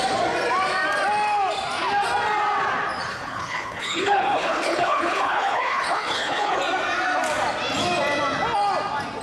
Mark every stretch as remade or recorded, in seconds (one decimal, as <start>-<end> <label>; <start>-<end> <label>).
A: 0.0-3.1 recorded; 3.1-6.6 remade; 6.6-9.2 recorded